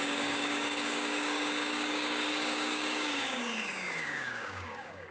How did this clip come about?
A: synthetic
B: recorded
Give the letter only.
A